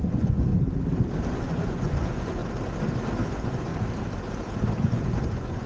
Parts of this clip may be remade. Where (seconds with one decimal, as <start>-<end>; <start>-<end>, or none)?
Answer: 0.0-0.5; 1.3-2.4; 3.3-3.7; 4.8-5.7